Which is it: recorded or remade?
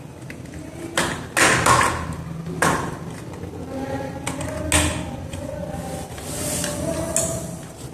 recorded